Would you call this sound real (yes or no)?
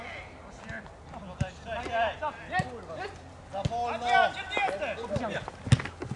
yes